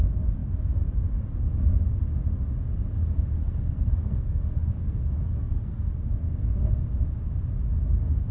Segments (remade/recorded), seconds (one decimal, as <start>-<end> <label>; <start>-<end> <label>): 0.0-3.4 recorded; 3.4-6.8 remade; 6.8-8.3 recorded